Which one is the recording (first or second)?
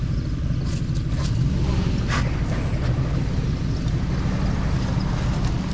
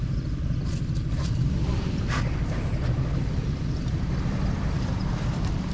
first